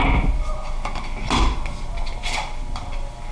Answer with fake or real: real